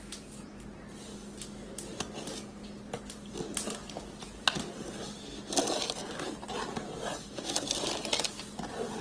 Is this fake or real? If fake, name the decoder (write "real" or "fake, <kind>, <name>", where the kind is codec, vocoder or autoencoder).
real